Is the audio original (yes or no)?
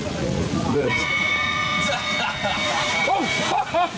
no